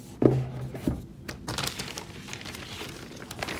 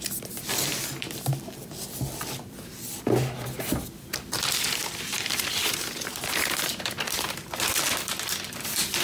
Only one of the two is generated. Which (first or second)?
second